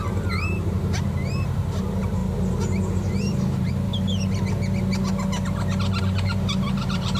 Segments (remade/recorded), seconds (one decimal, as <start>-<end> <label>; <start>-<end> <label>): 0.0-2.2 remade; 2.2-2.9 recorded; 2.9-3.9 remade; 3.9-6.0 recorded; 6.0-7.2 remade